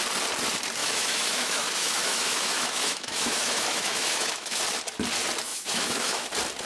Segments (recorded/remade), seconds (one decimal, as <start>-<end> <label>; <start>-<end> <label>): 0.0-0.8 recorded; 0.8-4.6 remade; 4.6-5.5 recorded; 5.5-6.3 remade; 6.3-6.7 recorded